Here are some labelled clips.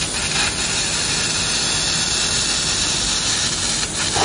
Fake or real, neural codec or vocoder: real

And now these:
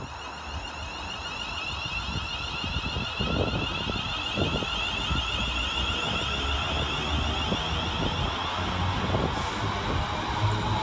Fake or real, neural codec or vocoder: real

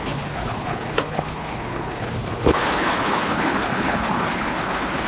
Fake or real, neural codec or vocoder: fake, codec, HILCodec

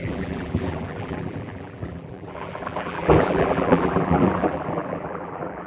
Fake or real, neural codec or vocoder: fake, vocoder, BigVGAN v2